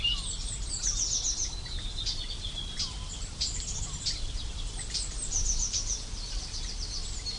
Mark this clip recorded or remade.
recorded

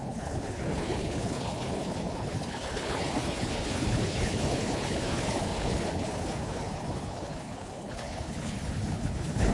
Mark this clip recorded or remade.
remade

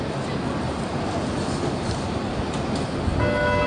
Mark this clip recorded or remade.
recorded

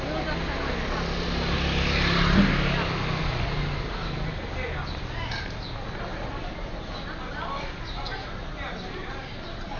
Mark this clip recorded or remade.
recorded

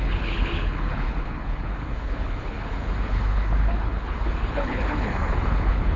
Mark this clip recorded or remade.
remade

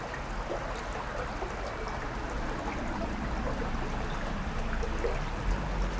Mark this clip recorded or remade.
recorded